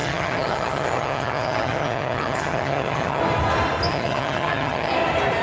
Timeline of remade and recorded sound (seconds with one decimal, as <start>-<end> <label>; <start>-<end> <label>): 0.0-3.2 remade; 3.2-3.9 recorded; 3.9-4.9 remade; 4.9-5.4 recorded